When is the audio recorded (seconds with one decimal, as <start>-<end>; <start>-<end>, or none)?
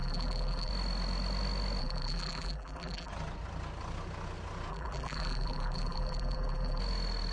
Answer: 0.7-1.8; 3.1-4.7; 6.8-7.3